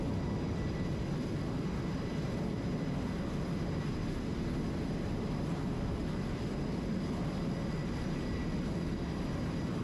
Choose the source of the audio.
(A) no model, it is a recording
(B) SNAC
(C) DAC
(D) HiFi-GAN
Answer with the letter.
A